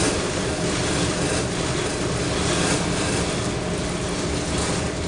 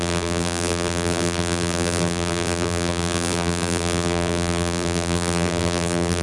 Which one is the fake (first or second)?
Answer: second